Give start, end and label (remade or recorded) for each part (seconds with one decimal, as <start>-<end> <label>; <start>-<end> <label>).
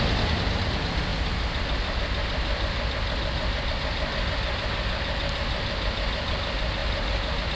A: 0.0-7.5 recorded